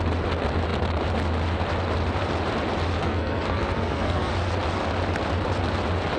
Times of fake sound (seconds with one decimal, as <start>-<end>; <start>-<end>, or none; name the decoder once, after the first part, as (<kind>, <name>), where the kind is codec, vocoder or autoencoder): 3.0-4.3 (codec, SNAC)